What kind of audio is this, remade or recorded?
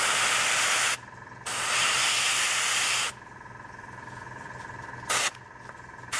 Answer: recorded